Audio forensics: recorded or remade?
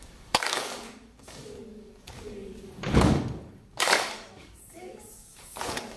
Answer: remade